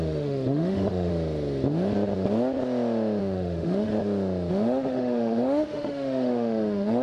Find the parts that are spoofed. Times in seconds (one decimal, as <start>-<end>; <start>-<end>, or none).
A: 0.0-1.1; 3.2-3.9; 4.5-7.0